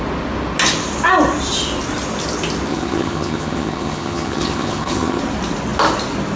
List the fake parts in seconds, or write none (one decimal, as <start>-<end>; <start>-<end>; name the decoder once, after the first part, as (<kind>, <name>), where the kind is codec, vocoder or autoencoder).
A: 2.7-5.2 (vocoder, HiFi-GAN)